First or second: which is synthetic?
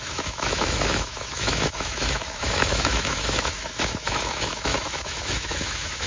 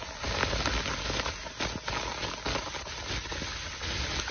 first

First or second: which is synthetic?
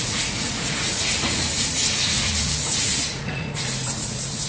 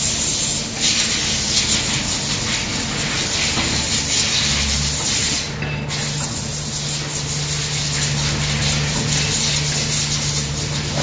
first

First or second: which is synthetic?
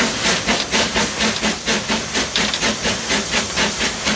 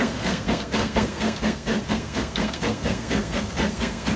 second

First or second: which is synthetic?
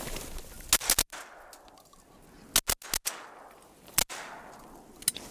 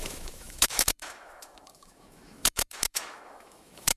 second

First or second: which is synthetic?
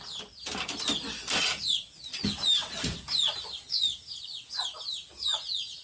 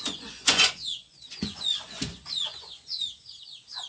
second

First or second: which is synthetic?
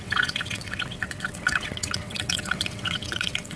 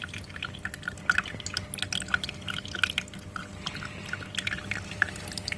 first